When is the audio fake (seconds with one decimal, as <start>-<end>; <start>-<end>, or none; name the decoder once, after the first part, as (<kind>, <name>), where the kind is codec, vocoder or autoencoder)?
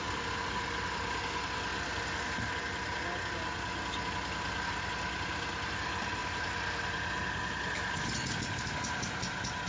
none